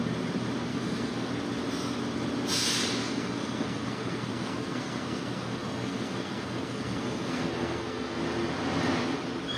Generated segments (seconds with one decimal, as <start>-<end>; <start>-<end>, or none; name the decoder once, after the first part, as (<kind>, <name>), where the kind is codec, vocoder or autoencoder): 0.7-1.3 (codec, SNAC); 3.0-8.2